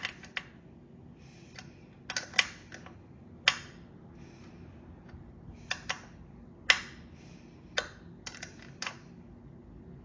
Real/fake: real